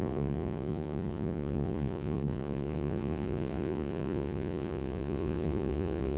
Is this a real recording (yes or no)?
no